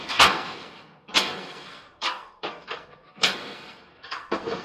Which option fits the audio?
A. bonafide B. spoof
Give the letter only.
B